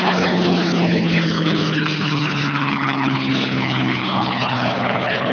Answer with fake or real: fake